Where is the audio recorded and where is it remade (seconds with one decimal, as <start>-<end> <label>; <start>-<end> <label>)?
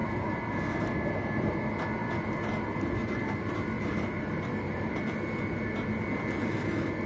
0.0-0.5 remade; 0.5-2.0 recorded; 2.0-6.3 remade; 6.3-7.1 recorded